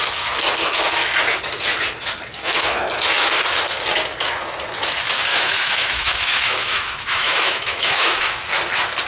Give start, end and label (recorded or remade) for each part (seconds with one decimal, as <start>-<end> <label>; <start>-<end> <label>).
0.0-5.3 recorded; 5.3-8.4 remade; 8.4-9.1 recorded